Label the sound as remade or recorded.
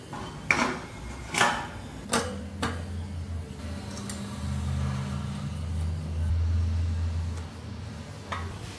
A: recorded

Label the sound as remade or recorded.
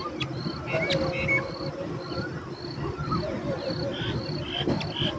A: recorded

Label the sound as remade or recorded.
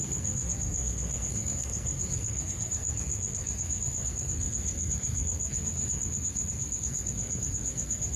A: remade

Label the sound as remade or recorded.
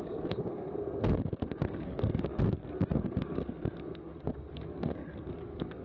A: remade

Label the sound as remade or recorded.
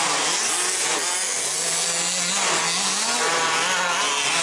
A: recorded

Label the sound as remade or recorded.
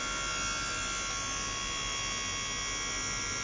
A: recorded